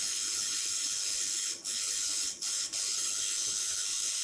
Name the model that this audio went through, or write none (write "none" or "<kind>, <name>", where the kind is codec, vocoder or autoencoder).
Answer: codec, HILCodec